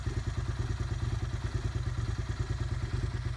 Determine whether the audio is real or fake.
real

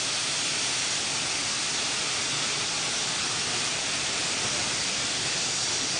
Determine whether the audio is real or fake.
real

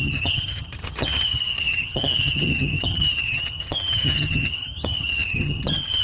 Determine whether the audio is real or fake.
fake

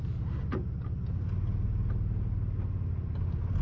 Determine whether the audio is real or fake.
real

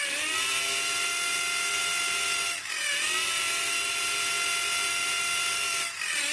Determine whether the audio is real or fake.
real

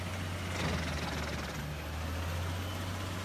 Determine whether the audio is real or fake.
real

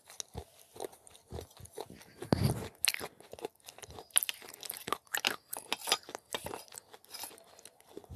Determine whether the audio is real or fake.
real